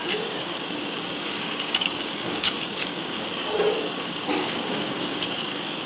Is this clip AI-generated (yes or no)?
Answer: yes